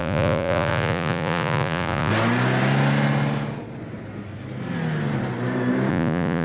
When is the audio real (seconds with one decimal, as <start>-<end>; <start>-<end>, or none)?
2.1-5.9